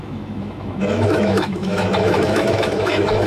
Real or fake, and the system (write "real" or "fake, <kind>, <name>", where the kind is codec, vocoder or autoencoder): fake, autoencoder, DAC-VAE